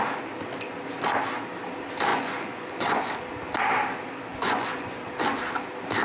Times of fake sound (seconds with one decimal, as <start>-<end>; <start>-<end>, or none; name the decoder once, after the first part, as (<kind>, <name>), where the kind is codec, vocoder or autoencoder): 2.1-3.1 (vocoder, Vocos); 4.3-5.0